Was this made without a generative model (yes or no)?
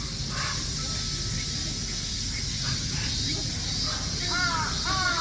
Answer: yes